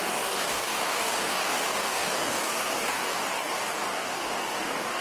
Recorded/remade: remade